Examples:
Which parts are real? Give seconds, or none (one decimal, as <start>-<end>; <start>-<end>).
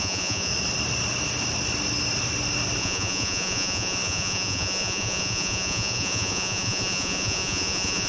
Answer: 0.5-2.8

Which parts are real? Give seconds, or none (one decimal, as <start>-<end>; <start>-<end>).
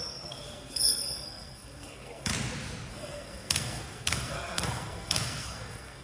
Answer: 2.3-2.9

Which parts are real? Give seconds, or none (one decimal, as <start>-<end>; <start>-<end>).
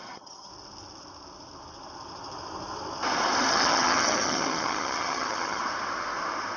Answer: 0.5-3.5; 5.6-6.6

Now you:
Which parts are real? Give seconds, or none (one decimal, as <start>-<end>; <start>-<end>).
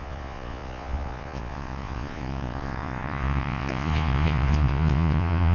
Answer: none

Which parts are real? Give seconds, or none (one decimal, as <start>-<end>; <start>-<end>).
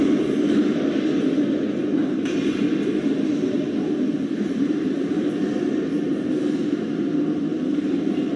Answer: 0.0-2.0; 5.6-7.5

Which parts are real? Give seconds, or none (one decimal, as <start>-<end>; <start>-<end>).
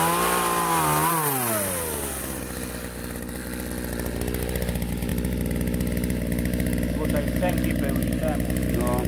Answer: 0.0-9.1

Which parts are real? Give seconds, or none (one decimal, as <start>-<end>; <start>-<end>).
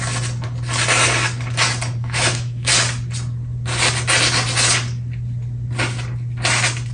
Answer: 0.0-2.0; 2.7-6.9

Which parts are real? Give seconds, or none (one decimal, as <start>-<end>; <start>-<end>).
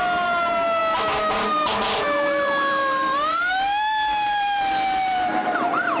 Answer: 0.8-1.5